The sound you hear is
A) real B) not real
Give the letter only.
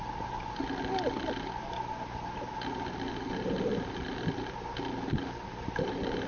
A